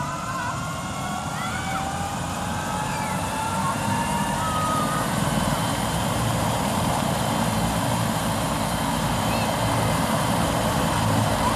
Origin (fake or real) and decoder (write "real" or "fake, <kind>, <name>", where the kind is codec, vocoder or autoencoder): fake, vocoder, BigVGAN v2